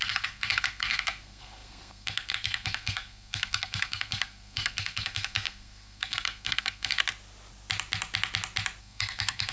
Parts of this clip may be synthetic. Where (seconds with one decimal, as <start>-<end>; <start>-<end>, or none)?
0.0-7.0; 8.8-9.5